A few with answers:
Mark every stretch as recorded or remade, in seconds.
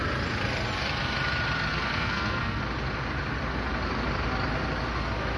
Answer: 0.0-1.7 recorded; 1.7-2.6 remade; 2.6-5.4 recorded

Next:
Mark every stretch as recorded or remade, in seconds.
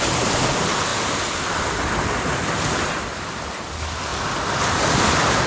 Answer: 0.0-5.5 recorded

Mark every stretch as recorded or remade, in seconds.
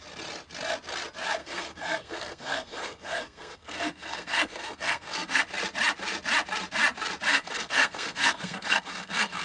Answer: 0.0-1.4 recorded; 1.4-5.4 remade; 5.4-7.3 recorded; 7.3-9.4 remade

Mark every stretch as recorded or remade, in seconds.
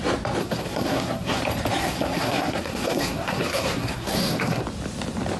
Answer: 0.0-0.4 recorded; 0.4-1.4 remade; 1.4-1.8 recorded; 1.8-4.6 remade; 4.6-5.4 recorded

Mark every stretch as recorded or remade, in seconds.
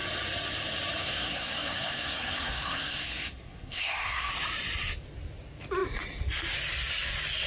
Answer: 0.0-1.0 recorded; 1.0-4.3 remade; 4.3-7.5 recorded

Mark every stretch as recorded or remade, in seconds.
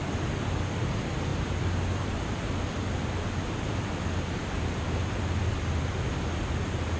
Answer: 0.0-7.0 recorded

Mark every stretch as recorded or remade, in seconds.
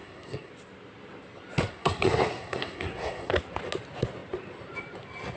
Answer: 0.0-0.5 remade; 0.5-1.7 recorded; 1.7-3.3 remade; 3.3-5.4 recorded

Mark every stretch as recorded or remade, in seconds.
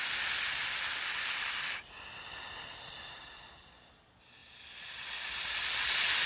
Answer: 0.0-6.3 recorded